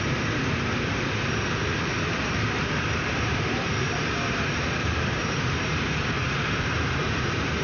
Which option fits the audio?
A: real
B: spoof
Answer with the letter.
B